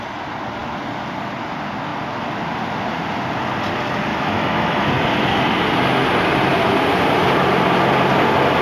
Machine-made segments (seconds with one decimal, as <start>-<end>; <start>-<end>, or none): 4.1-4.9